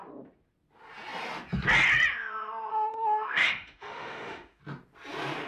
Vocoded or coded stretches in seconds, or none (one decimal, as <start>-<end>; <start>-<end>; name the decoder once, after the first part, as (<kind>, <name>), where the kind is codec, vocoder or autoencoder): 2.7-4.6 (autoencoder, DAC-VAE)